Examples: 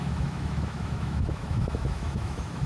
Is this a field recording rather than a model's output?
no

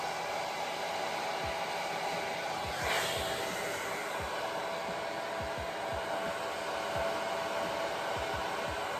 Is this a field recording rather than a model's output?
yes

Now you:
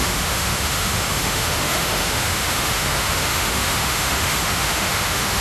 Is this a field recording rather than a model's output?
no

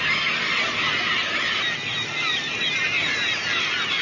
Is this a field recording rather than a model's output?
yes